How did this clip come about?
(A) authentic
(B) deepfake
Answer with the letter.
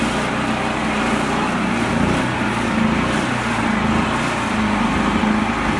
A